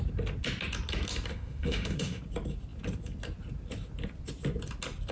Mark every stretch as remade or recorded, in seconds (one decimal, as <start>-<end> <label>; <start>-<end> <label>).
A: 0.0-1.3 recorded; 1.3-2.2 remade; 2.2-5.1 recorded